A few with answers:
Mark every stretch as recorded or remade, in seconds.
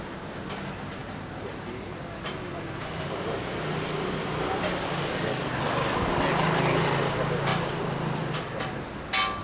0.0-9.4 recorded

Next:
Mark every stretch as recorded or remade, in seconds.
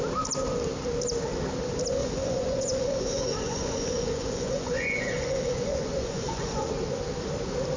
0.0-2.0 recorded; 2.0-6.7 remade; 6.7-7.8 recorded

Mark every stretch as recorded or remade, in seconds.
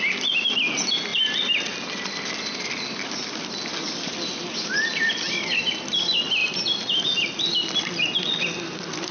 0.0-9.1 recorded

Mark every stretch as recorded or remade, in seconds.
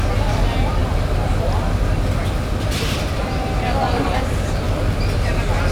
0.0-5.7 recorded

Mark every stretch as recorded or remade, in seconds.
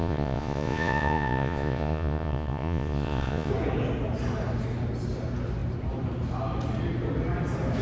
0.0-3.5 remade; 3.5-7.8 recorded